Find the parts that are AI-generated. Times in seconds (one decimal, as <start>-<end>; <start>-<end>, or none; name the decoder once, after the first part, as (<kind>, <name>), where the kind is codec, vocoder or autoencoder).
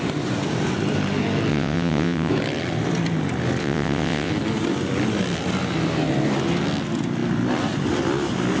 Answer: 1.5-2.3 (vocoder, WaveNeXt); 3.6-4.3